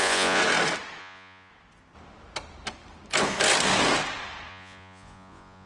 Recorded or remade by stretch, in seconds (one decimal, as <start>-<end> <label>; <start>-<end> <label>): 0.0-0.4 remade; 0.4-1.0 recorded; 1.0-1.5 remade; 1.5-4.5 recorded; 4.5-5.7 remade